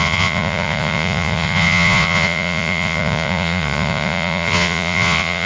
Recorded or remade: remade